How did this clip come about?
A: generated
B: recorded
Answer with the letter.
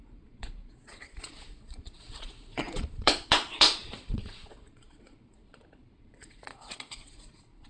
A